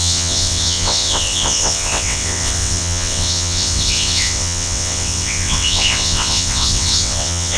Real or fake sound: fake